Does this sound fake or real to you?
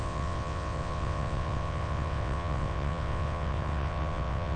fake